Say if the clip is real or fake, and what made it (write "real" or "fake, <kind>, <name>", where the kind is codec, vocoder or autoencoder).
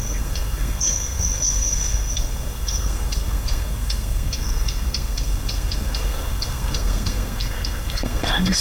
fake, codec, SNAC